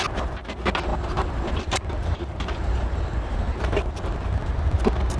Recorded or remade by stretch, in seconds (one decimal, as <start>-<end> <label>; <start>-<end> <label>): 0.0-0.9 recorded; 0.9-3.8 remade; 3.8-5.2 recorded